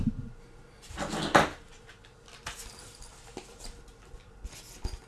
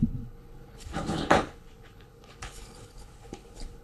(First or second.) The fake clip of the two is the second